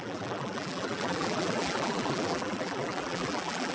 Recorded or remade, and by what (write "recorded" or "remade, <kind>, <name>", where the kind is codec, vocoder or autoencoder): remade, vocoder, BigVGAN v2